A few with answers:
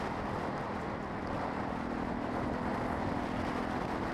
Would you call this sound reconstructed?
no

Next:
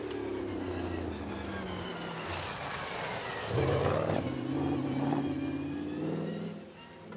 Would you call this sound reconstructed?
no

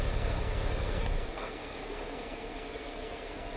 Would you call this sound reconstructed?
yes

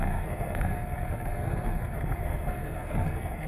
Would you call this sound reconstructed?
yes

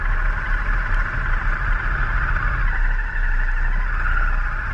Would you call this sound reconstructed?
no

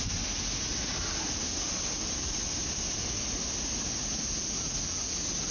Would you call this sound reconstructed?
no